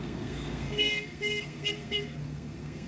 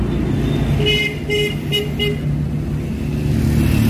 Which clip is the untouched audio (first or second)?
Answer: second